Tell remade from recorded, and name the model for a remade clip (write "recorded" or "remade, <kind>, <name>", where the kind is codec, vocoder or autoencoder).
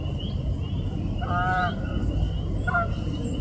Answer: recorded